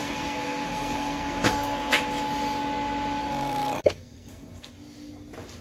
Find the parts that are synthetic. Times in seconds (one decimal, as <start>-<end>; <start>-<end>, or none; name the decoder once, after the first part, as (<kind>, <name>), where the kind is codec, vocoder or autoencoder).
0.0-2.0 (codec, SNAC); 3.2-4.7